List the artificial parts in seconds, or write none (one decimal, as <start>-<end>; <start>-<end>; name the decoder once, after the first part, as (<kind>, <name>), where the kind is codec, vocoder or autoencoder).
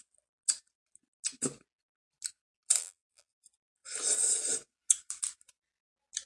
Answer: 2.8-3.4 (vocoder, BigVGAN v2)